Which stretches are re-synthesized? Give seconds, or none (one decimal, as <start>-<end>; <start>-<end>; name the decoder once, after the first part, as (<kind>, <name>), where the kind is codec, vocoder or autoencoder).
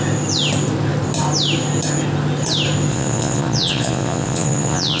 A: 2.9-5.0 (vocoder, Vocos)